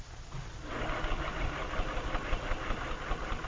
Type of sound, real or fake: real